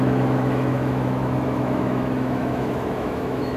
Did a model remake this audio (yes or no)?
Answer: yes